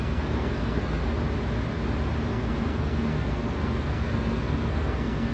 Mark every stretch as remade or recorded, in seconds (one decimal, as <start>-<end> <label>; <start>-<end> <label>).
0.0-1.0 remade; 1.0-2.3 recorded; 2.3-5.3 remade